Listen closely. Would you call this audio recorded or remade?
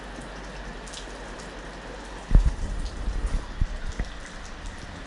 recorded